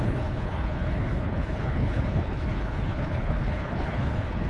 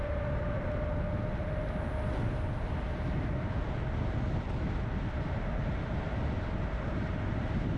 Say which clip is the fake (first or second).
first